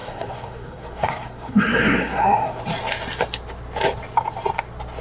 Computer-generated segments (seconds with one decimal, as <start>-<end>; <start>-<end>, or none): 0.0-2.6